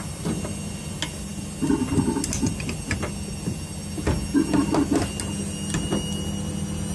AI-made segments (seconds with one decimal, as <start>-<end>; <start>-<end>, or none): none